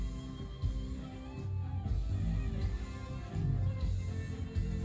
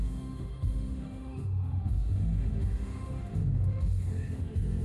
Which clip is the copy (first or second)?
second